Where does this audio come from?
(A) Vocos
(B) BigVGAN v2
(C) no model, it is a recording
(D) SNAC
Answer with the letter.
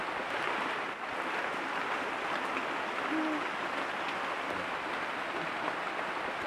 C